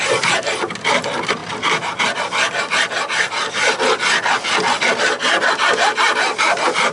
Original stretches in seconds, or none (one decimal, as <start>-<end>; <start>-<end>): 0.0-6.9